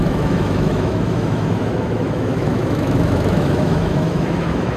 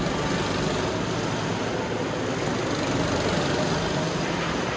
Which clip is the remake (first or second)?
first